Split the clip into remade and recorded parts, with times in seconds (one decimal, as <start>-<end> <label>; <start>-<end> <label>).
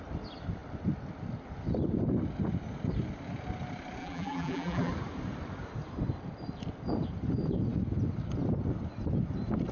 0.0-4.0 recorded; 4.0-4.9 remade; 4.9-9.7 recorded